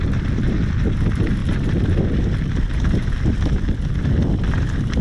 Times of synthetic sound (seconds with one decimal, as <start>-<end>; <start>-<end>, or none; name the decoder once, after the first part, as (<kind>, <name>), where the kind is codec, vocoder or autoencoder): none

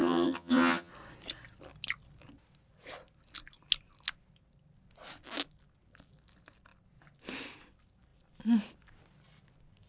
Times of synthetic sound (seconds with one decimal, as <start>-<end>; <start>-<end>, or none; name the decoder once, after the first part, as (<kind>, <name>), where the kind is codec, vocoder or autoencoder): 0.0-0.9 (vocoder, HiFi-GAN)